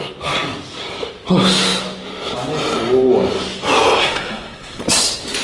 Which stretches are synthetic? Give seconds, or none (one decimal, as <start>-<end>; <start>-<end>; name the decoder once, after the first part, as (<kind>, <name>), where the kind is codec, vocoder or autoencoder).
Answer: 4.0-4.8 (codec, SNAC)